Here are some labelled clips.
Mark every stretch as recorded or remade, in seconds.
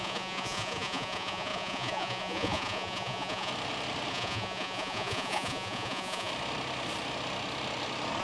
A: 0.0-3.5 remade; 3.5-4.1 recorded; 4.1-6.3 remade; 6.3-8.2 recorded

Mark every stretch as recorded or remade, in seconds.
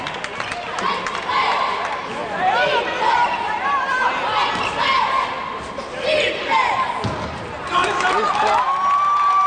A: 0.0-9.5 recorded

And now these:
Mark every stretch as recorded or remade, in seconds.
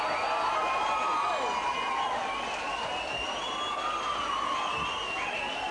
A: 0.0-5.7 recorded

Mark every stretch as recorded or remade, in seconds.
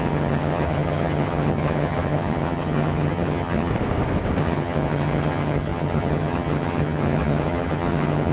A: 0.0-3.7 remade; 3.7-4.4 recorded; 4.4-8.3 remade